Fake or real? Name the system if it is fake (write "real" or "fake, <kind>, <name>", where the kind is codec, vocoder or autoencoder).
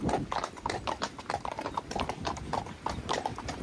real